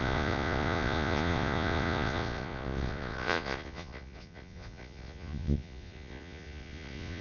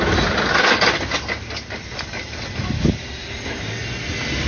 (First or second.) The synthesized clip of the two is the first